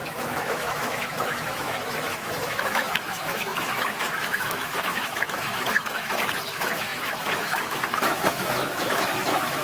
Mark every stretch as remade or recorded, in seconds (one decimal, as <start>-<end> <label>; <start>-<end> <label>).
0.0-9.6 remade